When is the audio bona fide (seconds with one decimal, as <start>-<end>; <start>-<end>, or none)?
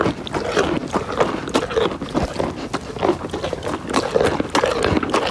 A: 0.0-5.3